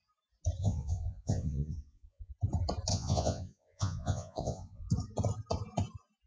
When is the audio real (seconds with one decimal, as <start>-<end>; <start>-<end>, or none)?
0.0-0.6; 2.3-2.9; 4.9-6.3